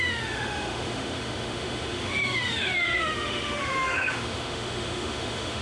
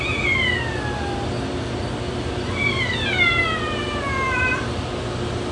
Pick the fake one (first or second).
first